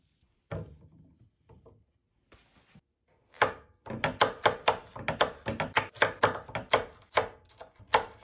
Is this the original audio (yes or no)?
yes